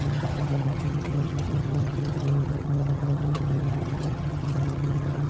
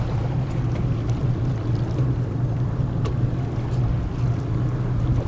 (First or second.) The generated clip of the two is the first